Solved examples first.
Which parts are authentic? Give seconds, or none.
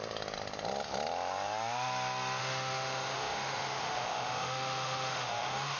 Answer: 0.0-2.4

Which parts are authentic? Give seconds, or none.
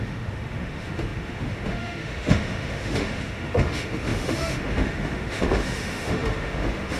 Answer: none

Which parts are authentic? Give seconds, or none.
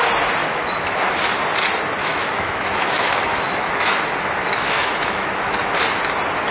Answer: 0.0-0.4; 1.1-2.0; 4.0-4.4; 5.8-6.5